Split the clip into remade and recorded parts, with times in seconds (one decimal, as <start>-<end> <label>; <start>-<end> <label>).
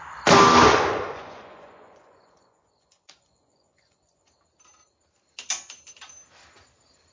0.0-0.7 recorded; 0.7-4.3 remade; 4.3-7.1 recorded